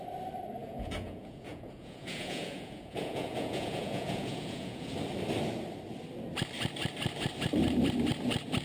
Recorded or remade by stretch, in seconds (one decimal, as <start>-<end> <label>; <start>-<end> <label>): 0.0-0.6 recorded; 0.6-4.9 remade; 4.9-8.6 recorded